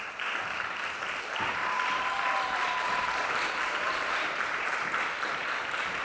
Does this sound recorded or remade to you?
remade